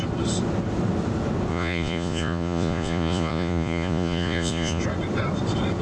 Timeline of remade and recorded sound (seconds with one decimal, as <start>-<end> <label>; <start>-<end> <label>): 0.0-1.5 recorded; 1.5-4.8 remade; 4.8-5.8 recorded